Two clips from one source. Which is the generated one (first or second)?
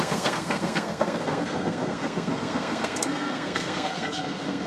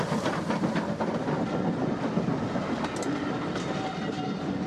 first